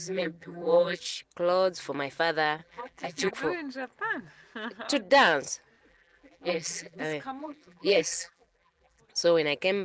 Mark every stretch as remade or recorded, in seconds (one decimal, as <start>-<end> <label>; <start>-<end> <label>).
0.0-1.0 remade; 1.0-2.6 recorded; 2.6-3.3 remade; 3.3-5.9 recorded; 5.9-7.0 remade; 7.0-7.4 recorded; 7.4-9.0 remade; 9.0-9.8 recorded